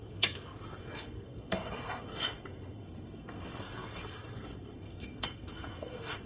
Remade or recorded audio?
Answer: remade